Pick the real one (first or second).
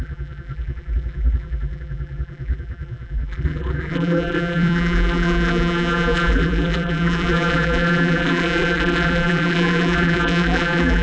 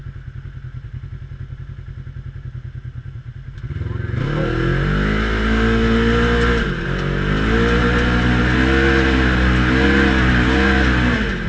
second